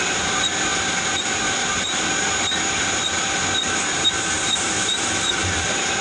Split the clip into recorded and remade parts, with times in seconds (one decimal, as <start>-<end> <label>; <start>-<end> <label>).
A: 0.0-6.0 recorded